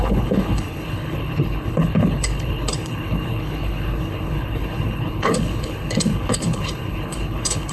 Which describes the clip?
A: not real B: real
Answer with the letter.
A